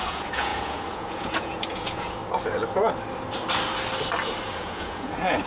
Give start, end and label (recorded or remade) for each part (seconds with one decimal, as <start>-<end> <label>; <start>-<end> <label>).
0.0-2.2 remade; 2.2-4.6 recorded; 4.6-5.5 remade